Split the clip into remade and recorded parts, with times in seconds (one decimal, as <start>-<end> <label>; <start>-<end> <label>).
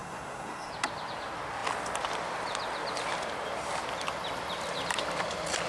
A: 0.0-0.7 remade; 0.7-5.7 recorded